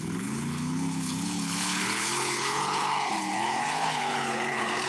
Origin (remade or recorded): remade